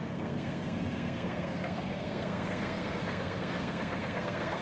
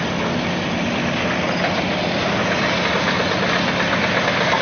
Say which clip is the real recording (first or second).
second